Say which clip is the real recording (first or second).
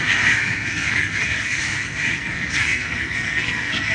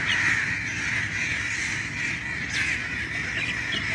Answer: second